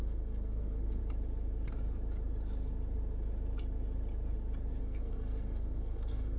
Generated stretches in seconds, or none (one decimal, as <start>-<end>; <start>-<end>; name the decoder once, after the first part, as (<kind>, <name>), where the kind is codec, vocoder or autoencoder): 0.0-1.0 (codec, SNAC); 4.8-6.4